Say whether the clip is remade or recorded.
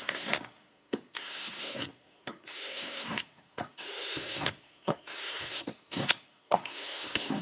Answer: remade